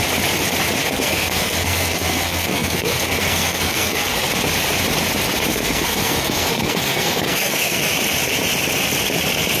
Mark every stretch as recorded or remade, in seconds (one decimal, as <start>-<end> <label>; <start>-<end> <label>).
0.0-0.8 recorded; 0.8-4.3 remade; 4.3-5.5 recorded; 5.5-7.8 remade; 7.8-9.6 recorded